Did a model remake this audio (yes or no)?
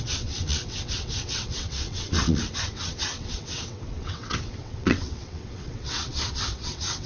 yes